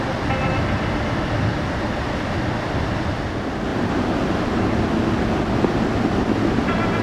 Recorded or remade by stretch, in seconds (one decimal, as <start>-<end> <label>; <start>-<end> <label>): 0.0-3.7 recorded; 3.7-4.6 remade; 4.6-7.0 recorded